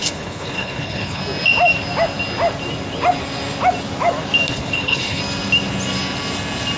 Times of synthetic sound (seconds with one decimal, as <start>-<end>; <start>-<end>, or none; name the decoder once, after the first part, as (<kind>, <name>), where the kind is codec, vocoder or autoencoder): 0.0-1.2 (codec, HILCodec); 4.5-5.2